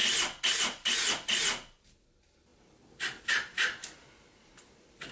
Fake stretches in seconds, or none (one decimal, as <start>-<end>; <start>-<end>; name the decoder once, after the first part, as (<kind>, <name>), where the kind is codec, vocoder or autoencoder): none